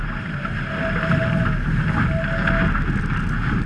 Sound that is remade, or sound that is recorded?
recorded